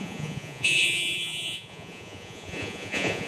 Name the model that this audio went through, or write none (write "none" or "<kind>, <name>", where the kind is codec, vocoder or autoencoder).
vocoder, Vocos